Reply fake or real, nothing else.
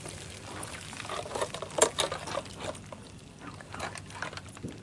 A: real